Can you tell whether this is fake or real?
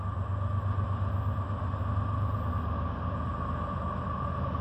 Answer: real